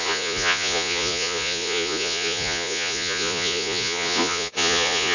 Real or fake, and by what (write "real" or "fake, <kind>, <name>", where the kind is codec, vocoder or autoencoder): fake, vocoder, Vocos